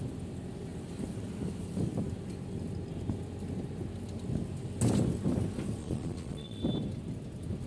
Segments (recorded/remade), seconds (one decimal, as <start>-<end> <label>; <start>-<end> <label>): 0.0-5.8 recorded; 5.8-6.6 remade; 6.6-7.7 recorded